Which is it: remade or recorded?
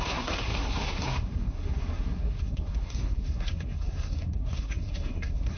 remade